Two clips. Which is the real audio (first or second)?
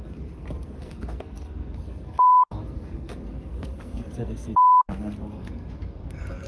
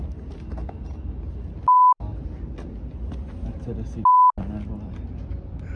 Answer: second